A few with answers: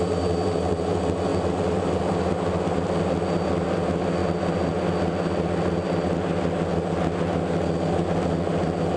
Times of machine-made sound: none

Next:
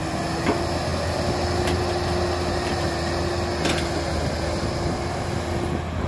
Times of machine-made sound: none

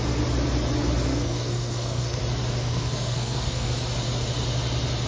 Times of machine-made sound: 1.1-2.2; 2.6-3.7

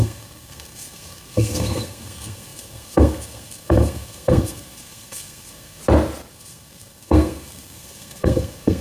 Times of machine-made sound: 0.0-5.8; 6.3-8.8

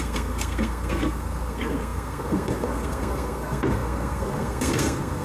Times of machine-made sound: 0.0-5.2

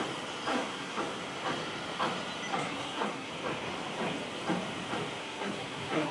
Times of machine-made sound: 0.5-1.0; 2.5-3.3; 5.2-6.1

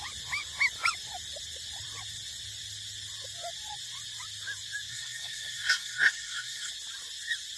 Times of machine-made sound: 4.9-6.7

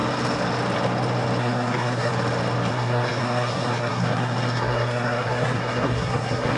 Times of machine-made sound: 1.4-2.1; 2.7-6.6